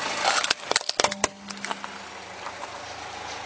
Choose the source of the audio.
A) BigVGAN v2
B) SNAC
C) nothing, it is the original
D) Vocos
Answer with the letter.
C